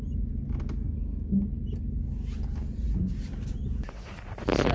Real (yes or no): yes